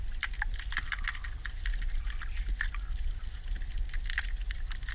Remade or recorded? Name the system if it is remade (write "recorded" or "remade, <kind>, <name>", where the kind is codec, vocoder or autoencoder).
recorded